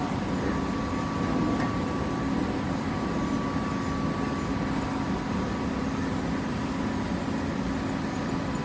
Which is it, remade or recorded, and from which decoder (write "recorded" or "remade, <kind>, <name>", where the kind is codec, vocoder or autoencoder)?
recorded